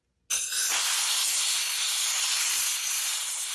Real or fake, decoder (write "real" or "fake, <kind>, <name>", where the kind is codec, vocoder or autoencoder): real